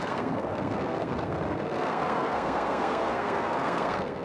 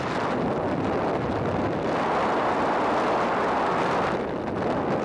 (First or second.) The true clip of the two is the second